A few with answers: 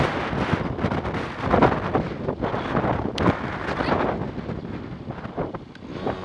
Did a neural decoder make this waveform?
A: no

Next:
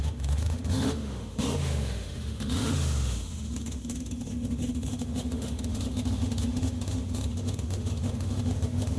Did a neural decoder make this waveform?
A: yes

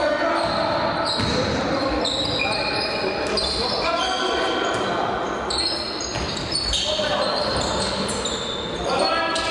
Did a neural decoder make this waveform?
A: no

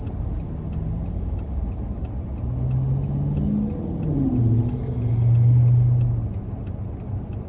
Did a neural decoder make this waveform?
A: no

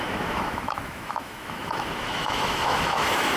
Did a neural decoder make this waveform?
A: yes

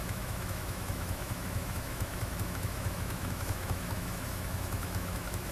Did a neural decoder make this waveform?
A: yes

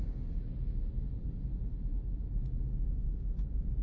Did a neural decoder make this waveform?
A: no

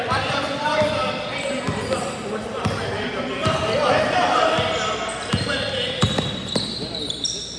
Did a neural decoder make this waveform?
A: no